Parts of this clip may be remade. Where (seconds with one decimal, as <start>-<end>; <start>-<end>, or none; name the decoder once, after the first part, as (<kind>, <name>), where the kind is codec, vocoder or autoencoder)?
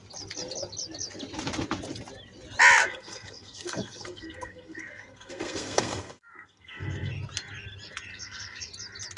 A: 2.8-7.1 (codec, SNAC); 8.1-8.7